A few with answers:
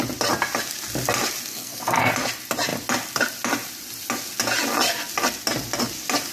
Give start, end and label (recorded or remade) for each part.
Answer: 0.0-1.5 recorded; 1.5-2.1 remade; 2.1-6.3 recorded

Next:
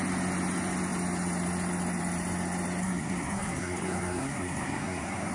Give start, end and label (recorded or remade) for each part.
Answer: 0.0-2.8 recorded; 2.8-5.3 remade

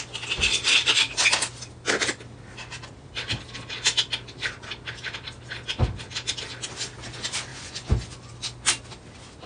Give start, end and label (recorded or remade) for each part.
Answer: 0.0-7.5 recorded; 7.5-8.3 remade; 8.3-9.5 recorded